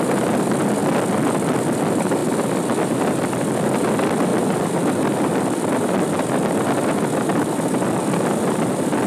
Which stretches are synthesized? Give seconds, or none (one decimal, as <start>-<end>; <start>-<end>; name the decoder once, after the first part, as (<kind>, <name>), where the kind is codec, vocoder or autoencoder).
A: none